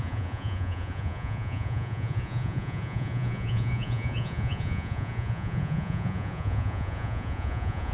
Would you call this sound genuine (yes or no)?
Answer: no